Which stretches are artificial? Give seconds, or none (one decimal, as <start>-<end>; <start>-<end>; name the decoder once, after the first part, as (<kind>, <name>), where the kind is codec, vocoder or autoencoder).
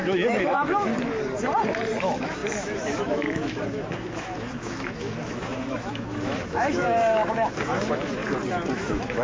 0.0-0.9 (autoencoder, DAC-VAE); 2.0-8.2; 8.7-9.2